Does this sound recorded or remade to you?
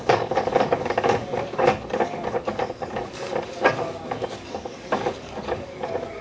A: remade